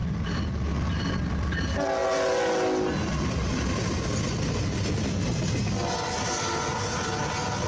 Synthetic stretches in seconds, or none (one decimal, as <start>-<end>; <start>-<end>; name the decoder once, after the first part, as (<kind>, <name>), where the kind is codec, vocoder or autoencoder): none